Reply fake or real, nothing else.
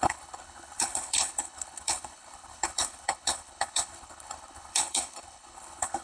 fake